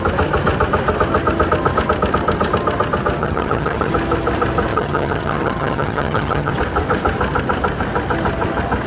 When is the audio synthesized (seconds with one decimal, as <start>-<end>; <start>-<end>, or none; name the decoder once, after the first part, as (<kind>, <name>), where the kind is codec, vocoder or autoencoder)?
3.2-3.9 (vocoder, HiFi-GAN); 4.7-6.5